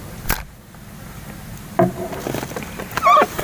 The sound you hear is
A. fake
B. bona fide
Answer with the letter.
B